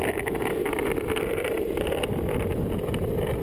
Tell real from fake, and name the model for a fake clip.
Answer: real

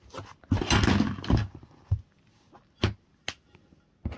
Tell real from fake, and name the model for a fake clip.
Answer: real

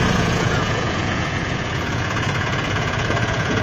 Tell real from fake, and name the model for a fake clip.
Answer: fake, vocoder, Vocos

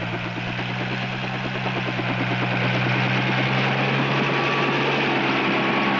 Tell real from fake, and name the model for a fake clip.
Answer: real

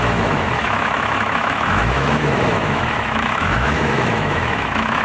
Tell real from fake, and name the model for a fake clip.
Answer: fake, autoencoder, DAC-VAE